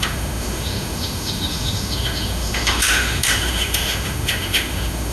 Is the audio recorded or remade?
remade